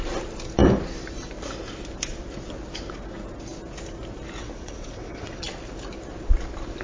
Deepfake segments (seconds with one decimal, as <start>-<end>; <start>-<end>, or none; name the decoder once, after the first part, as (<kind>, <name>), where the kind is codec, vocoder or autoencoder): 4.4-5.4 (vocoder, WaveNeXt)